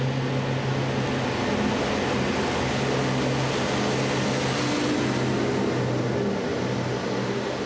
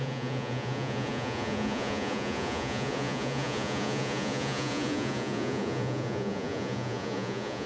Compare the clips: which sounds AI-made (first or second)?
second